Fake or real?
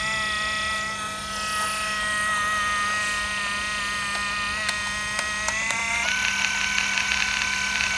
real